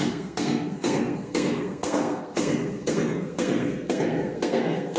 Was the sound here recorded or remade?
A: remade